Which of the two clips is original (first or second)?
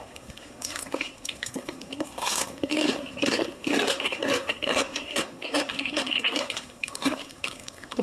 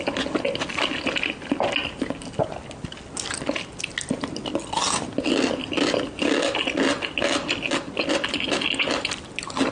second